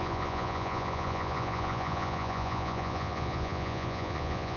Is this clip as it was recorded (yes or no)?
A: no